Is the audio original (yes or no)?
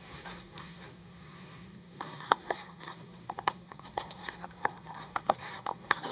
no